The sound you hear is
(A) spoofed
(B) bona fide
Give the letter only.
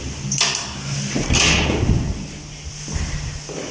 B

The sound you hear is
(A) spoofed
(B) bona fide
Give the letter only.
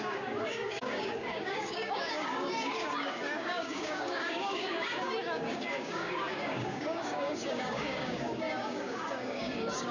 A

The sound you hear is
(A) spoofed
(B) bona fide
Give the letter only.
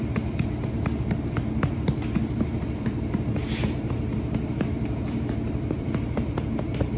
A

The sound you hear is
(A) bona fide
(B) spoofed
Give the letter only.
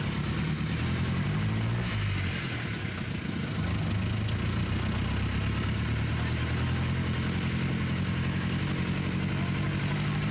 A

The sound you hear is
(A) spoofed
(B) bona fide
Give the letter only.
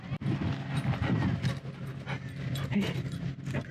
B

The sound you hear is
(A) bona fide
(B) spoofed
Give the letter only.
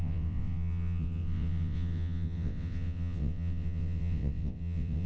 B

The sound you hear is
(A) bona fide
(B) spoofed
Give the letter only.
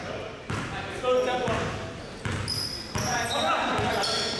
A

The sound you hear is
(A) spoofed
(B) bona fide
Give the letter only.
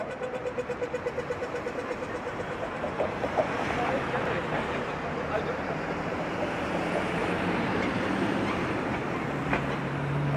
A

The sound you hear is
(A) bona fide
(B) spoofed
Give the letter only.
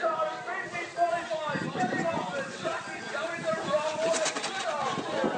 A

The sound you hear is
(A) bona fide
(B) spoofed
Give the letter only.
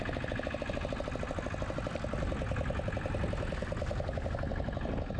A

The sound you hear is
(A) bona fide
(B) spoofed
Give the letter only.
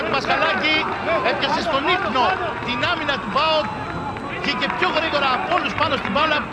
A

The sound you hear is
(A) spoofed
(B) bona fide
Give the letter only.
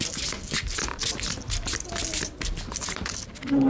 B